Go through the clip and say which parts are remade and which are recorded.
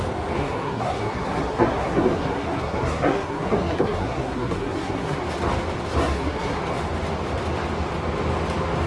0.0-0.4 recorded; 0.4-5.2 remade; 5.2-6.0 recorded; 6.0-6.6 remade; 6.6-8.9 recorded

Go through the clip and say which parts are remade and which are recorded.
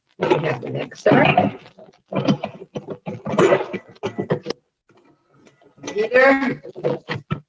0.0-7.5 recorded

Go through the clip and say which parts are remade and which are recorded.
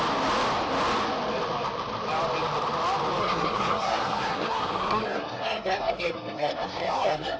0.0-3.2 recorded; 3.2-7.4 remade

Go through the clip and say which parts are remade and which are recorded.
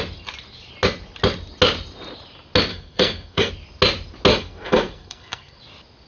0.0-2.7 recorded; 2.7-3.5 remade; 3.5-4.3 recorded; 4.3-5.6 remade; 5.6-6.1 recorded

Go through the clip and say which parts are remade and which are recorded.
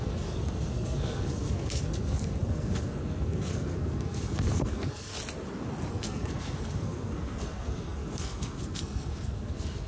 0.0-5.1 remade; 5.1-5.9 recorded; 5.9-9.9 remade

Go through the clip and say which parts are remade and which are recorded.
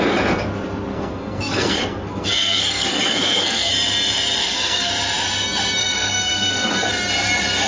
0.0-0.9 recorded; 0.9-3.7 remade; 3.7-4.4 recorded; 4.4-4.9 remade; 4.9-5.8 recorded; 5.8-6.9 remade; 6.9-7.7 recorded